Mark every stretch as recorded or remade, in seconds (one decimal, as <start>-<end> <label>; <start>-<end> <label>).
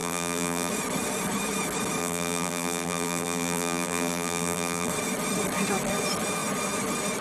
0.0-0.7 remade; 0.7-2.0 recorded; 2.0-4.9 remade; 4.9-7.2 recorded